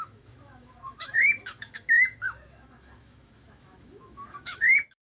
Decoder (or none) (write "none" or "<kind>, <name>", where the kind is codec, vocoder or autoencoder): autoencoder, DAC-VAE